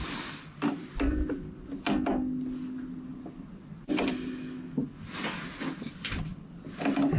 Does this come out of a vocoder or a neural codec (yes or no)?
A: no